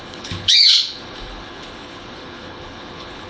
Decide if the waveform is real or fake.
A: fake